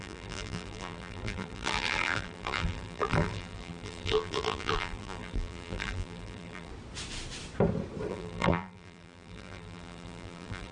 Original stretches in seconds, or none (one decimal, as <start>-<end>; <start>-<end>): 6.7-8.1